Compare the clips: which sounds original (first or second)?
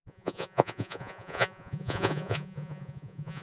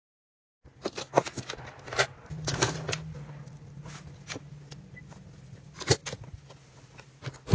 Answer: second